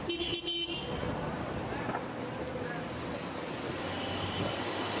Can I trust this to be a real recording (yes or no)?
yes